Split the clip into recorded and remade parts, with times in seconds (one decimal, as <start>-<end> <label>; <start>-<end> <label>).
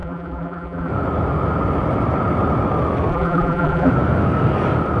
0.0-0.9 remade; 0.9-3.1 recorded; 3.1-3.9 remade; 3.9-5.0 recorded